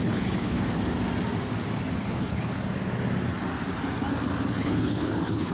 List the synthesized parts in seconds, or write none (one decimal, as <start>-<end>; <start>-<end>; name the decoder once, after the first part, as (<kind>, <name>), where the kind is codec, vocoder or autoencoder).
0.0-0.8 (codec, HILCodec); 2.0-2.6; 4.5-5.5